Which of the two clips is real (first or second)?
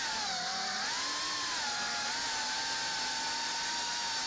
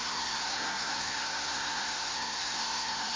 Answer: first